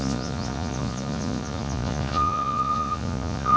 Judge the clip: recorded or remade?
remade